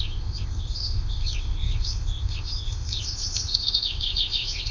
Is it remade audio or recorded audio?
remade